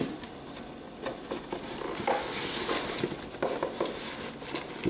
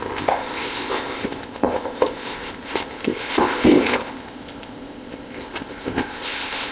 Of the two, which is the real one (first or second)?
first